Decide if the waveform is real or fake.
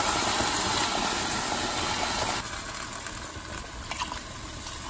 real